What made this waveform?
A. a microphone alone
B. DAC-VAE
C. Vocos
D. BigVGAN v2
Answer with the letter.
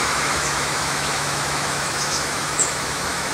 B